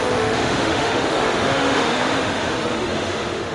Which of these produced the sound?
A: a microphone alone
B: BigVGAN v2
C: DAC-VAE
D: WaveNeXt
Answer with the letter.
C